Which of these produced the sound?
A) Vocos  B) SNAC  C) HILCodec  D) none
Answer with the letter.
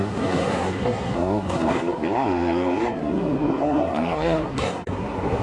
B